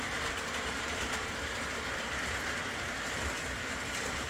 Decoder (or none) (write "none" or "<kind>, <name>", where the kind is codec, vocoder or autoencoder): none